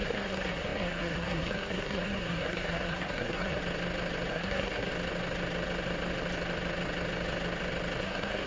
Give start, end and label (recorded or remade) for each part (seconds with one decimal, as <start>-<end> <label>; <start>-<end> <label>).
0.0-3.6 remade; 3.6-4.3 recorded; 4.3-4.9 remade; 4.9-8.0 recorded; 8.0-8.5 remade